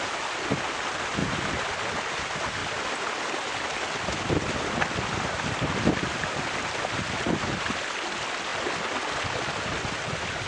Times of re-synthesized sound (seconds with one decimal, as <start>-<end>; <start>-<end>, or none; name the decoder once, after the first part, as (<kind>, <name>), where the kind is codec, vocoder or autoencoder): none